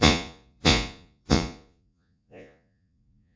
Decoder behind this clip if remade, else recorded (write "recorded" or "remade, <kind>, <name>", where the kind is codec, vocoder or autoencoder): remade, vocoder, Vocos